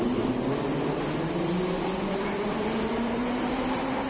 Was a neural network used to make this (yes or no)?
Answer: no